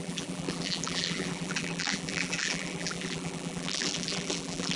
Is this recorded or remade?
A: remade